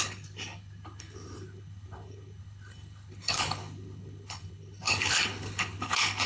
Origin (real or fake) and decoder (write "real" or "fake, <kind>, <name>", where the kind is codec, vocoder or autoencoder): fake, codec, HILCodec